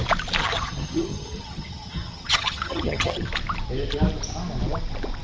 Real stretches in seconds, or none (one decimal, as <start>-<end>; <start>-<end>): 0.0-0.4; 3.3-5.2